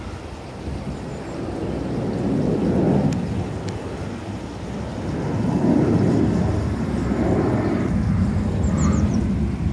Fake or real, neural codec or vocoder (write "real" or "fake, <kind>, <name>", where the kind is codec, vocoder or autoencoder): real